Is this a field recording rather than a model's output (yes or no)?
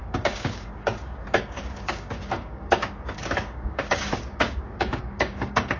no